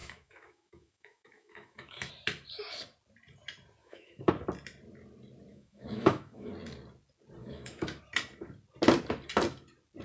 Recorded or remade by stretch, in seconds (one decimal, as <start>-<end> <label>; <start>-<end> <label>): 0.0-2.1 remade; 2.1-3.8 recorded; 3.8-4.3 remade; 4.3-5.5 recorded; 5.5-6.5 remade; 6.5-7.4 recorded; 7.4-8.0 remade; 8.0-10.0 recorded

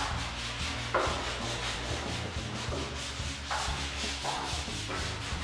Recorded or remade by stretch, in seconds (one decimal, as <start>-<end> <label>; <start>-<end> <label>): 0.0-3.7 recorded; 3.7-4.7 remade; 4.7-5.4 recorded

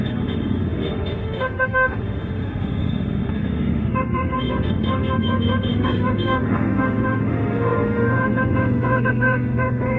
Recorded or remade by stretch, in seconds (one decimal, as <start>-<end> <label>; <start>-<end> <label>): 0.0-10.0 remade

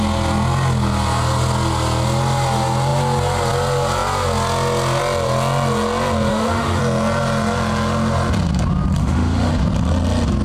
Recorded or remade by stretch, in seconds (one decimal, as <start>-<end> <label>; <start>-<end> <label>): 0.0-6.3 recorded; 6.3-6.8 remade; 6.8-9.0 recorded; 9.0-9.5 remade; 9.5-10.4 recorded

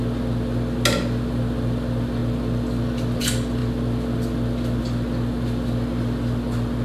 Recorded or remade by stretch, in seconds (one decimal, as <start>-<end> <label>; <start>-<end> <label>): 0.0-6.8 recorded

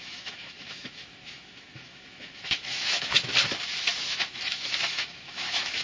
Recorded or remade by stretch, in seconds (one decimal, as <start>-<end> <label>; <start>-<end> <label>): 0.0-3.3 remade; 3.3-4.1 recorded; 4.1-5.8 remade